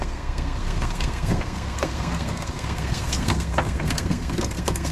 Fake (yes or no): yes